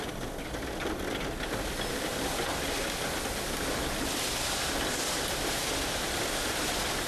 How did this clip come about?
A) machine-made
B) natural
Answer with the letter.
B